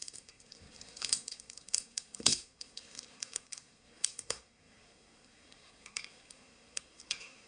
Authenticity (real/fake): fake